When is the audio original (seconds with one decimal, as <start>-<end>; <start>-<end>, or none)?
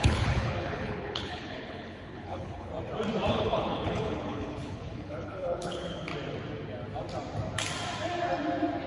2.7-3.3; 6.1-8.9